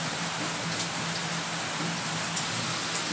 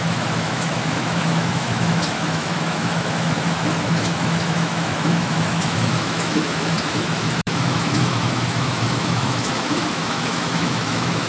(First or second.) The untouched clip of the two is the first